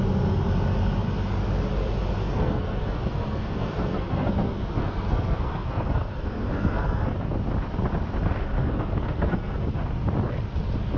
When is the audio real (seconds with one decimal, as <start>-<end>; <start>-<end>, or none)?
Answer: 0.0-2.2; 7.1-8.6; 9.8-11.0